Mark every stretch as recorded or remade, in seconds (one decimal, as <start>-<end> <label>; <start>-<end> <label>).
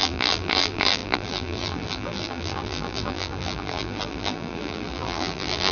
0.0-5.7 remade